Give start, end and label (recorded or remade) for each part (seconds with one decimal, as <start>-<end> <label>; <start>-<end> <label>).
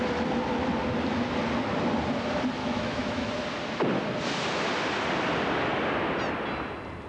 0.0-2.6 recorded; 2.6-3.3 remade; 3.3-7.1 recorded